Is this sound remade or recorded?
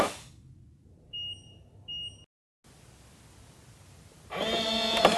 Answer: recorded